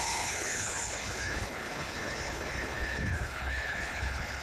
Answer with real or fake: fake